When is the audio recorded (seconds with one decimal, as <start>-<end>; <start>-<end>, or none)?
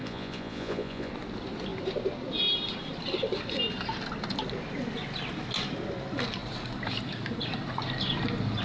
1.1-8.6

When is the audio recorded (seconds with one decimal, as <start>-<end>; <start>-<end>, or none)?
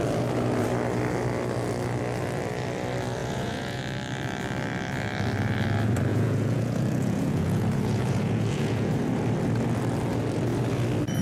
0.0-3.2; 3.8-6.1; 8.9-11.2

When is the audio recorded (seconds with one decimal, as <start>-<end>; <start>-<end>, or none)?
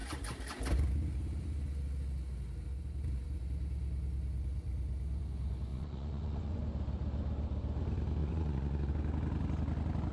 0.0-5.7; 6.6-8.2; 8.9-10.1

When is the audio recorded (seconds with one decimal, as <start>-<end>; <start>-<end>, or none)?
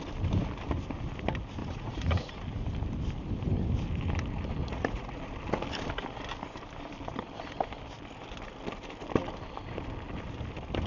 0.0-1.6; 2.3-4.6; 5.2-10.9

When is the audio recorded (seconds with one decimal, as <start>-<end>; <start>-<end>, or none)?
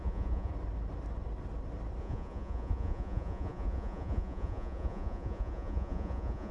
0.5-2.0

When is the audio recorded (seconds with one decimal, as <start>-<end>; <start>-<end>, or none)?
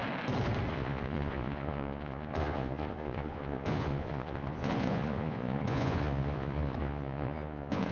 0.0-0.7